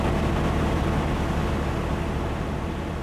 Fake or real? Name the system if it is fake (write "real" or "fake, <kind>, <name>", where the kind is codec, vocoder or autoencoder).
real